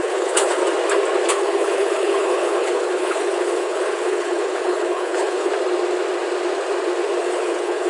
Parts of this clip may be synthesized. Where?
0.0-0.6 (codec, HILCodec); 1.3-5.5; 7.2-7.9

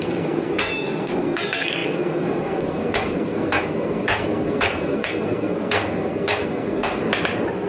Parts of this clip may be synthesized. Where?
0.0-7.0 (codec, SNAC)